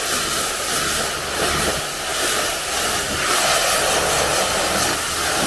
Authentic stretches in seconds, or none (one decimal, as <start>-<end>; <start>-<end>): 0.0-5.5